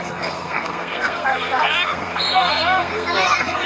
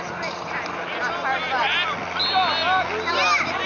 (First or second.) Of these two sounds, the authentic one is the second